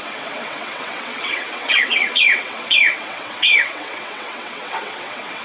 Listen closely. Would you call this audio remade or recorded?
remade